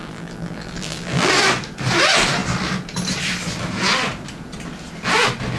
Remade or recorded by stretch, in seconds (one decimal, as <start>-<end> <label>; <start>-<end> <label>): 0.0-1.3 remade; 1.3-5.6 recorded